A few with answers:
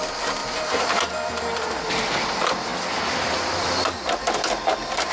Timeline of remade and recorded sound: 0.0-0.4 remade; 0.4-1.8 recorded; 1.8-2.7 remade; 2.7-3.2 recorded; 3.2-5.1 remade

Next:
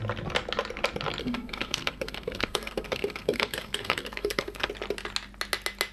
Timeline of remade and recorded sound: 0.0-1.2 recorded; 1.2-4.7 remade; 4.7-5.9 recorded

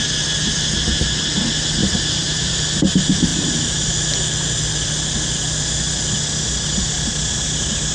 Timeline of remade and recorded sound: 0.0-1.8 recorded; 1.8-2.5 remade; 2.5-3.3 recorded; 3.3-3.9 remade; 3.9-7.9 recorded

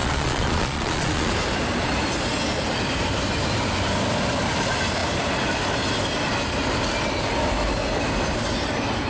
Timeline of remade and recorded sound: 0.0-1.3 remade; 1.3-9.1 recorded

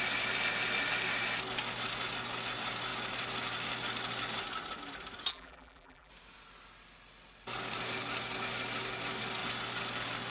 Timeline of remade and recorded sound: 0.0-5.3 recorded; 5.3-6.1 remade; 6.1-10.3 recorded

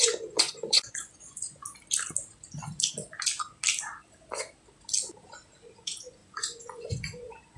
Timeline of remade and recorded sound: 0.0-1.6 remade; 1.6-5.5 recorded; 5.5-7.6 remade